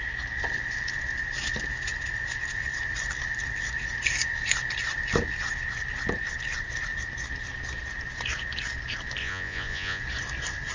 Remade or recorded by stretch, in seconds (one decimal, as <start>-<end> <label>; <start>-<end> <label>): 0.0-9.2 recorded; 9.2-10.0 remade; 10.0-10.7 recorded